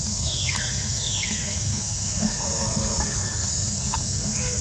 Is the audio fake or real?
fake